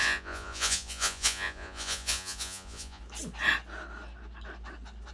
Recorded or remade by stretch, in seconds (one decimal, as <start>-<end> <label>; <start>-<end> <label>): 0.0-3.0 remade; 3.0-5.1 recorded